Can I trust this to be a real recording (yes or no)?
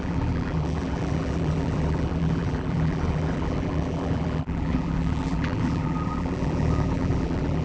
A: no